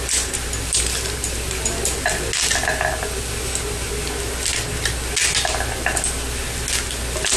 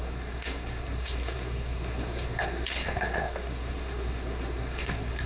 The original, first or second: first